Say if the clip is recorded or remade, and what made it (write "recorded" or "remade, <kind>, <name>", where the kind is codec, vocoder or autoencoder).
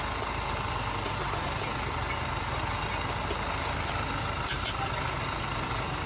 recorded